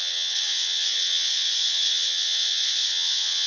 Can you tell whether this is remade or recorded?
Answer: remade